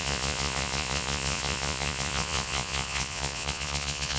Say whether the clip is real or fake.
fake